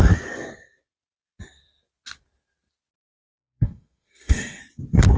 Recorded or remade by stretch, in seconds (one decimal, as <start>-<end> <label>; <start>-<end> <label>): 0.0-3.0 recorded; 3.0-4.6 remade; 4.6-5.2 recorded